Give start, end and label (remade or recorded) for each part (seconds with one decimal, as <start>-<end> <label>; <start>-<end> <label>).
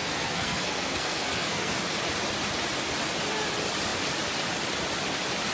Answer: 0.0-1.8 remade; 1.8-5.5 recorded